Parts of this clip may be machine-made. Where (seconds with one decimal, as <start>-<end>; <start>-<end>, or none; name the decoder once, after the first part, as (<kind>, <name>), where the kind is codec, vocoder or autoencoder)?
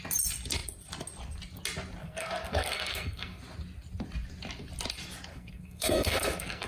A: 2.0-3.4 (codec, SNAC); 5.3-6.7